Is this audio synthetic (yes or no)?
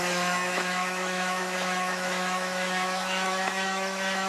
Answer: yes